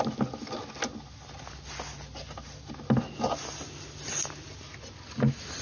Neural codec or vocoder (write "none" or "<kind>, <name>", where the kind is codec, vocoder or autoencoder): none